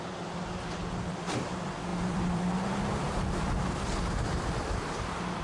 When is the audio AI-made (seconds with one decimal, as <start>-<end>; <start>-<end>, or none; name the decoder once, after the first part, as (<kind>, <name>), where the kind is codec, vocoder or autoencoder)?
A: 0.0-5.4 (vocoder, BigVGAN v2)